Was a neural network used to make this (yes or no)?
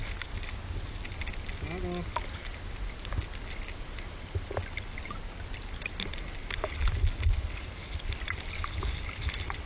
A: no